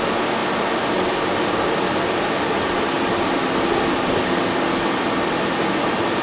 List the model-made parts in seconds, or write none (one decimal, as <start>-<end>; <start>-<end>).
none